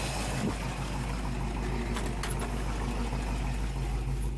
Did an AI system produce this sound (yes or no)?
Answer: no